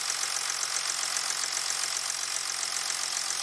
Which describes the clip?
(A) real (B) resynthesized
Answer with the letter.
A